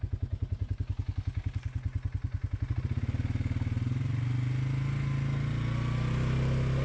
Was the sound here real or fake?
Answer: real